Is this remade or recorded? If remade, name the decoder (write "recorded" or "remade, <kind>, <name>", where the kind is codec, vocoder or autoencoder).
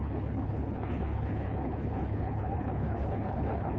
remade, codec, HILCodec